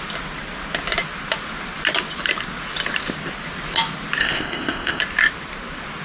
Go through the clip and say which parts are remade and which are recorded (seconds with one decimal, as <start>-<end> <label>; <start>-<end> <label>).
0.0-4.2 recorded; 4.2-5.0 remade; 5.0-6.0 recorded